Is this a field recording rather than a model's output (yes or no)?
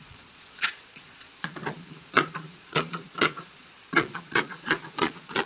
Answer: no